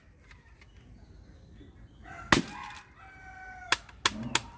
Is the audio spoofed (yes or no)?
no